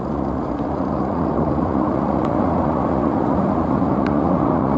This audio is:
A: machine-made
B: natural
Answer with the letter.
A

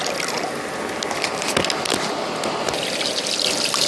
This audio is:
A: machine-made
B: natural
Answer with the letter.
B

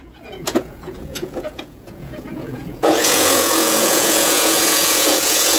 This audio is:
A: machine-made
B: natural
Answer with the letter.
A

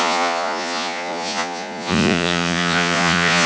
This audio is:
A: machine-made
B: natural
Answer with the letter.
A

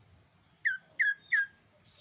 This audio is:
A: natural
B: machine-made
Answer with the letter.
A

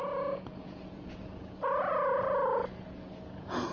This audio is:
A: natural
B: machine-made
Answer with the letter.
B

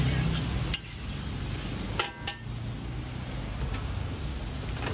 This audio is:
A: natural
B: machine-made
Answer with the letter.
A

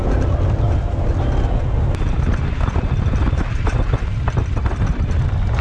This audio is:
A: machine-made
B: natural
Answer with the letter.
B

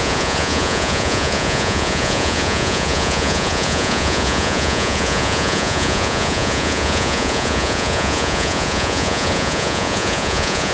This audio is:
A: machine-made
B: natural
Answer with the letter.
A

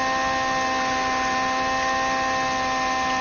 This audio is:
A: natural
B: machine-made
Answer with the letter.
A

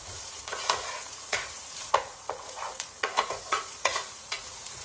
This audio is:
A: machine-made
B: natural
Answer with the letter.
A